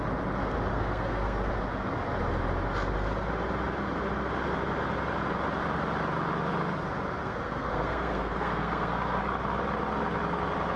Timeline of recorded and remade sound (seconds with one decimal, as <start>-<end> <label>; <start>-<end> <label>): 0.0-0.7 recorded; 0.7-1.5 remade; 1.5-7.2 recorded; 7.2-9.2 remade; 9.2-10.8 recorded